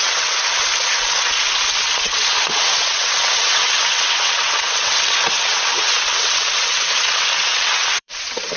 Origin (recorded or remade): remade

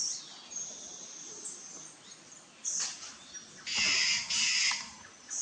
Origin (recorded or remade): recorded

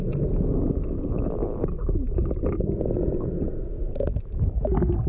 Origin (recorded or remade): recorded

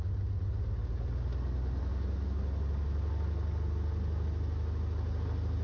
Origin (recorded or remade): recorded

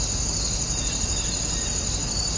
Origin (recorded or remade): recorded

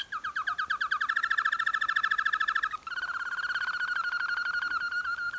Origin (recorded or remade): recorded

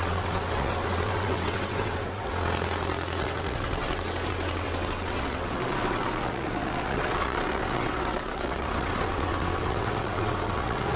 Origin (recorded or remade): remade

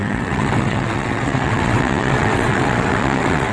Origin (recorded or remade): remade